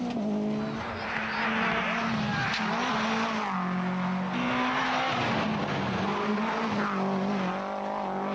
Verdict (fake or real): real